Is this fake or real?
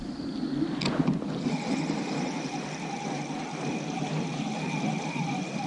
real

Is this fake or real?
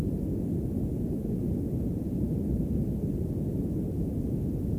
real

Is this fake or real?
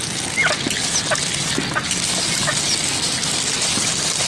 real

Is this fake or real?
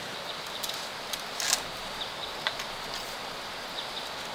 real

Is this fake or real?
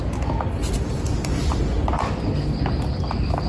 real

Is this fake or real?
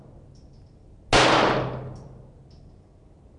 real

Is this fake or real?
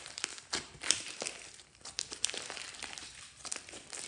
fake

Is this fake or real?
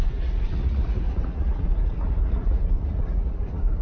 fake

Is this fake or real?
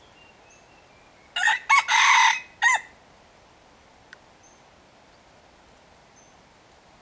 real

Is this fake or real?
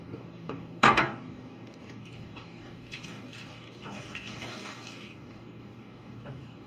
fake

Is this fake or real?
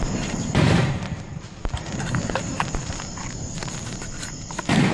fake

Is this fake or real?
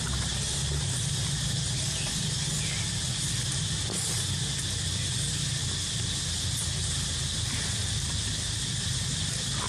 real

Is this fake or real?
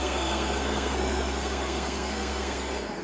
fake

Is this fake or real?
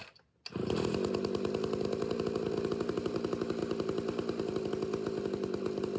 real